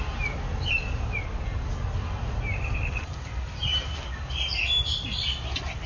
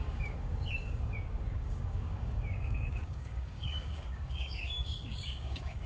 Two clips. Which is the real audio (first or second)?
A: first